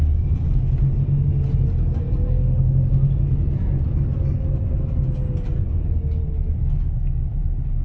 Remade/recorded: recorded